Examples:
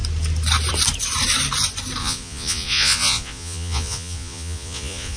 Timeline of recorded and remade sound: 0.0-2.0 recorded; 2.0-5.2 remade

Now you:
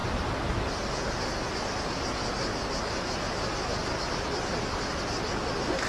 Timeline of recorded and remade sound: 0.0-5.9 recorded

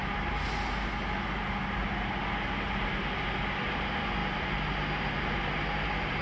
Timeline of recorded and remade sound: 0.0-6.2 recorded